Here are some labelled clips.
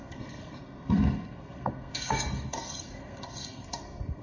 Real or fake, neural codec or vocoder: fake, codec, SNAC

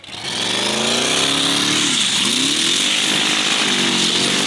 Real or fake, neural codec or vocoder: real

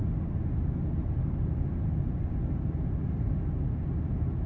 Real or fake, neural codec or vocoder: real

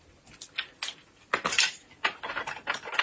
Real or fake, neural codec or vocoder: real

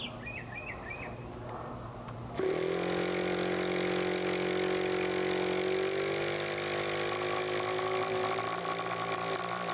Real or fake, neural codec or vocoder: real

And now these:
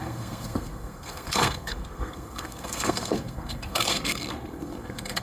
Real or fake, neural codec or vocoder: fake, codec, SNAC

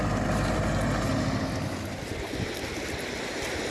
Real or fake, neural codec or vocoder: real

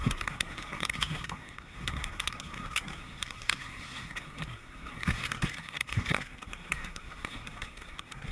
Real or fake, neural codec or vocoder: fake, codec, SNAC